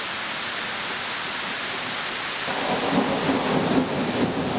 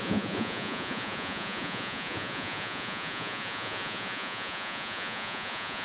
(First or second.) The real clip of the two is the first